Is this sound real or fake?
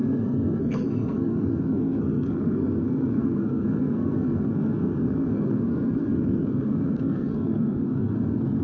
fake